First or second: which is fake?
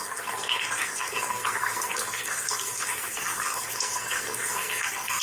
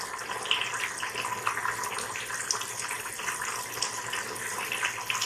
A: first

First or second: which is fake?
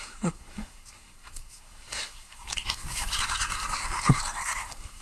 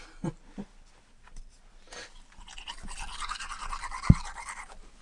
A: first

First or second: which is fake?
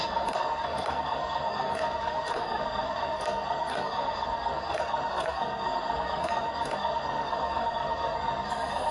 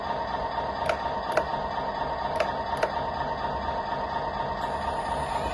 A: first